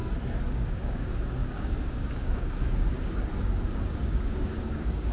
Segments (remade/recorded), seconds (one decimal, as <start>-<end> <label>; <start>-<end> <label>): 0.0-0.5 recorded; 0.5-5.1 remade